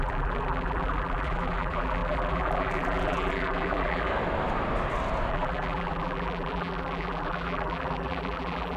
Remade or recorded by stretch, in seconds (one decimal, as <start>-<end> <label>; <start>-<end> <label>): 0.0-4.1 remade; 4.1-5.3 recorded; 5.3-8.8 remade

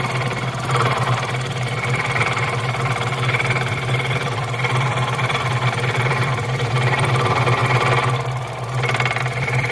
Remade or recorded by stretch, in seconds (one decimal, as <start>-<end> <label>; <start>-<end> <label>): 0.0-7.6 remade; 7.6-9.2 recorded; 9.2-9.7 remade

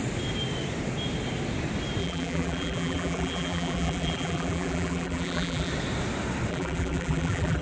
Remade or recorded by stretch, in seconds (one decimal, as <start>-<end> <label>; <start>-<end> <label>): 0.0-2.0 recorded; 2.0-5.7 remade; 5.7-6.5 recorded; 6.5-7.6 remade

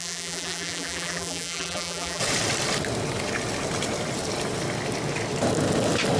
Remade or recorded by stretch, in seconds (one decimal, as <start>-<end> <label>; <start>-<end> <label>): 0.0-2.2 remade; 2.2-6.2 recorded

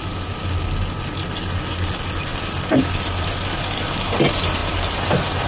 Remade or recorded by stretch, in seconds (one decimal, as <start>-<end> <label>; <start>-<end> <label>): 0.0-5.5 recorded

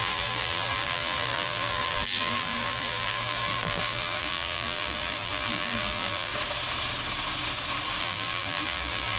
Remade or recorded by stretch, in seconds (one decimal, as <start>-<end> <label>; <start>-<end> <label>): 0.0-6.3 remade; 6.3-8.0 recorded; 8.0-9.2 remade